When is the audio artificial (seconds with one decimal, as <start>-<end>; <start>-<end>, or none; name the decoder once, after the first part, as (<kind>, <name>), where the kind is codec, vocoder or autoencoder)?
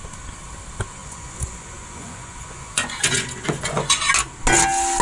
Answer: 1.0-4.0 (vocoder, Vocos)